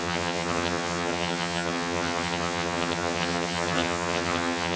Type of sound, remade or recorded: remade